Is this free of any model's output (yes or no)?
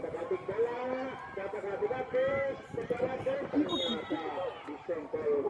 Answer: no